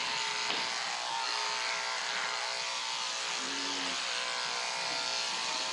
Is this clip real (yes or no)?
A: yes